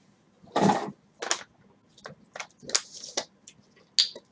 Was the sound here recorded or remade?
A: recorded